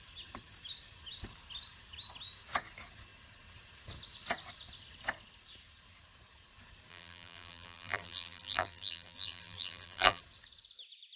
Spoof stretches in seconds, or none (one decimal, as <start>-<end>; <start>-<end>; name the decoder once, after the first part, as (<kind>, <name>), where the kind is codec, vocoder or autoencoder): 6.9-10.2 (vocoder, BigVGAN v2)